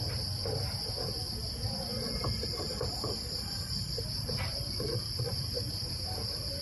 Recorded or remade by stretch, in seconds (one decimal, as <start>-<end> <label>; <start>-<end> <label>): 0.0-1.9 recorded; 1.9-5.5 remade; 5.5-6.6 recorded

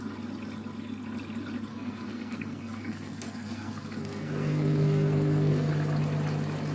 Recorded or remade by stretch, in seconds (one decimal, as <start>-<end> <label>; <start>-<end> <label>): 0.0-1.7 recorded; 1.7-5.7 remade; 5.7-6.7 recorded

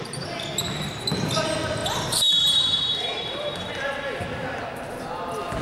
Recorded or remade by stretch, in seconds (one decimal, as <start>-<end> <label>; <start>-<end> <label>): 0.0-1.8 recorded; 1.8-3.7 remade; 3.7-5.6 recorded